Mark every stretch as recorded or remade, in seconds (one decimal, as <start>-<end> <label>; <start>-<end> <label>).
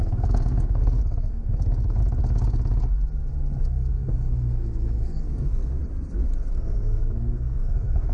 0.0-2.0 remade; 2.0-3.6 recorded; 3.6-5.8 remade; 5.8-6.5 recorded; 6.5-8.1 remade